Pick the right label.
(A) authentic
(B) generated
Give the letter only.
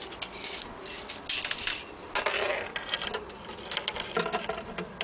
A